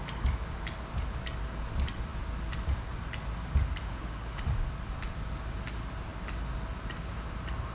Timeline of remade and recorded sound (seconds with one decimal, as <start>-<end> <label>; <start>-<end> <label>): 0.0-3.9 recorded; 3.9-4.4 remade; 4.4-7.7 recorded